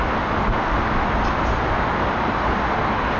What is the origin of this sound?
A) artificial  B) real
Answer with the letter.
B